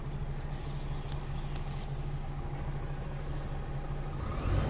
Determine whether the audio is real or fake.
real